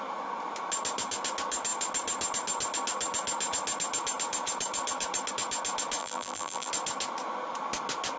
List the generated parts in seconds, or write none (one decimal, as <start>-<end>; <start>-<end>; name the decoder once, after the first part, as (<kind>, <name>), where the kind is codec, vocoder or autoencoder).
6.0-6.7 (vocoder, BigVGAN v2)